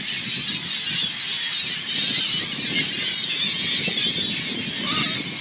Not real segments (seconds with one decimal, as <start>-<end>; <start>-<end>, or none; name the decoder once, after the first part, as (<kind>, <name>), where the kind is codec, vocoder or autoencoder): none